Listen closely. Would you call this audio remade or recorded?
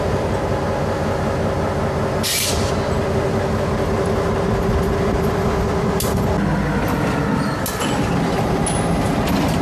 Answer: recorded